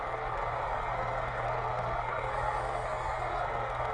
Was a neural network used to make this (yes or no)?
yes